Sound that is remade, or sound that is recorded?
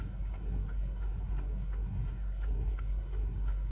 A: remade